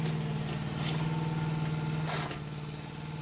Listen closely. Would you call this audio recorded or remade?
recorded